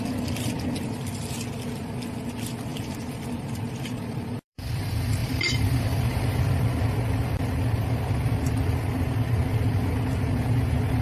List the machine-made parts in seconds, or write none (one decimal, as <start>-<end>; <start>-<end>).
2.7-4.8; 5.2-6.4